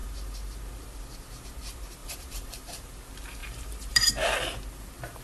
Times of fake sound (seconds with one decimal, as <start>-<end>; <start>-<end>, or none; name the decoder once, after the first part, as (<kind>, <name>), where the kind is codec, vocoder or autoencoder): 0.0-0.6 (vocoder, BigVGAN v2); 2.0-3.0; 3.4-4.1